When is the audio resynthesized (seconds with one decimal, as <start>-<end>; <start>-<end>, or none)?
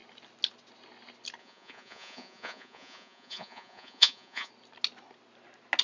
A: 1.4-4.5